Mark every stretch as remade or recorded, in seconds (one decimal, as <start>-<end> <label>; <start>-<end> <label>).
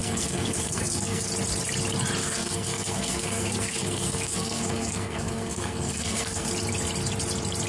0.0-1.3 remade; 1.3-2.2 recorded; 2.2-6.5 remade; 6.5-7.7 recorded